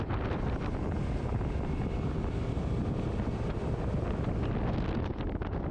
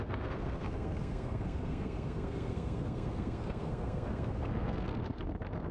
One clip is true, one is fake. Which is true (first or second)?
first